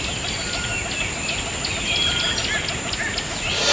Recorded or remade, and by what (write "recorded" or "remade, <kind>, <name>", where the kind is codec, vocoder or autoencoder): recorded